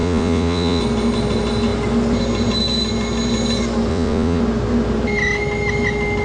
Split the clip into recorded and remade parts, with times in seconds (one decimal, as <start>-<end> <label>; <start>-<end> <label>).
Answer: 0.0-0.8 remade; 0.8-3.9 recorded; 3.9-4.4 remade; 4.4-6.2 recorded